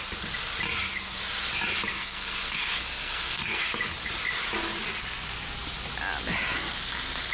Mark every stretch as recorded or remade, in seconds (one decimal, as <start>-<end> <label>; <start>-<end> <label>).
0.0-1.9 recorded; 1.9-3.7 remade; 3.7-7.3 recorded